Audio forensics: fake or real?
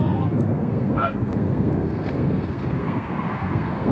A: fake